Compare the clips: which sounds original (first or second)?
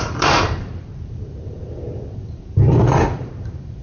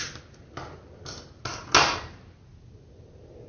second